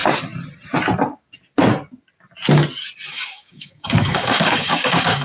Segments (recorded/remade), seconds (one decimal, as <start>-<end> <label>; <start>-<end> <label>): 0.0-3.1 recorded; 3.1-5.2 remade